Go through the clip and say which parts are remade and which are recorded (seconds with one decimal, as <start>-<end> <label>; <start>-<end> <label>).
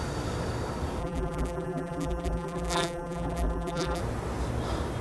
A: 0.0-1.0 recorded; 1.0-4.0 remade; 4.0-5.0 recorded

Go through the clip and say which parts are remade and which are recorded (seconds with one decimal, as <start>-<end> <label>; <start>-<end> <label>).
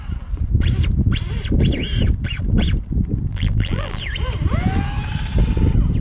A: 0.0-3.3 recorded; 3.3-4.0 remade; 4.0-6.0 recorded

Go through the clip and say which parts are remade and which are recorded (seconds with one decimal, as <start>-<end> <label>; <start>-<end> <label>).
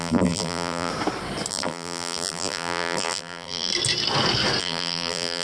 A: 0.0-0.9 remade; 0.9-1.5 recorded; 1.5-3.7 remade; 3.7-4.6 recorded; 4.6-5.4 remade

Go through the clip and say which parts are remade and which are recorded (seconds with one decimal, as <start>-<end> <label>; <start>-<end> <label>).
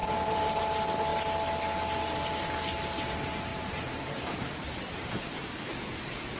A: 0.0-0.6 remade; 0.6-3.5 recorded; 3.5-4.5 remade; 4.5-6.4 recorded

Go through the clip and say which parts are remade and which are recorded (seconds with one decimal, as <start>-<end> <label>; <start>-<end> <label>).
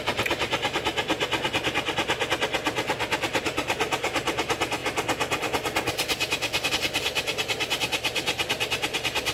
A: 0.0-0.9 remade; 0.9-3.4 recorded; 3.4-4.8 remade; 4.8-6.7 recorded; 6.7-9.3 remade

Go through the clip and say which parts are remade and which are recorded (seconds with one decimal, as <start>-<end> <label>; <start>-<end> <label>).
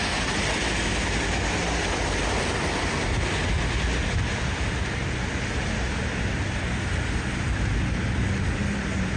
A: 0.0-9.2 recorded